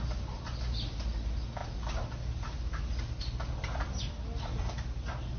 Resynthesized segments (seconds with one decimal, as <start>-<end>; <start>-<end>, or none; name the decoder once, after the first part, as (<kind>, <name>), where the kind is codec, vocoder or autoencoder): none